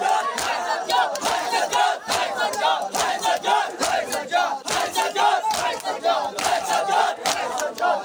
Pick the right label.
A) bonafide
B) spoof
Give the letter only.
A